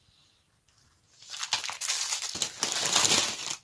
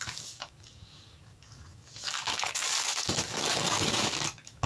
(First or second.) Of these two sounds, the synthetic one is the second